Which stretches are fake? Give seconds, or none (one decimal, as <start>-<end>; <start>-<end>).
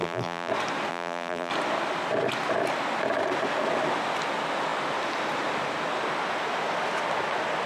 0.0-0.5; 0.9-1.5